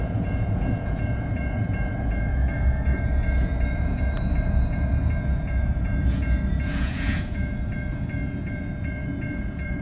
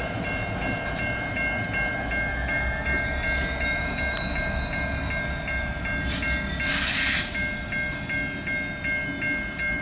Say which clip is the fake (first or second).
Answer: first